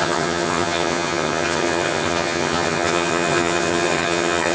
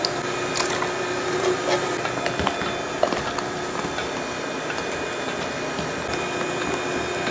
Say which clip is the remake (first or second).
first